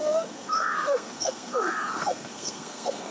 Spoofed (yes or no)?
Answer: yes